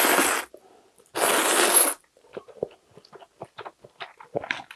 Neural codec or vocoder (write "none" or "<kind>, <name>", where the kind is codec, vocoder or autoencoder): none